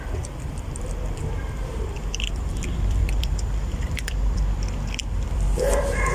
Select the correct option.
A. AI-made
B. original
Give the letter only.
A